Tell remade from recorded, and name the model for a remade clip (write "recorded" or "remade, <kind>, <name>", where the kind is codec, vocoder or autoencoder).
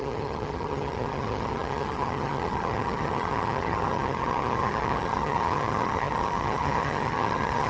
remade, vocoder, HiFi-GAN